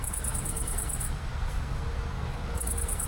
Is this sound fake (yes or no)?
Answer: yes